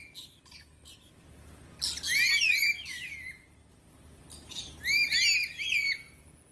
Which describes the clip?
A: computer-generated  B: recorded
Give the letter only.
B